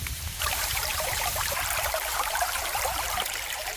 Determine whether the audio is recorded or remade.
remade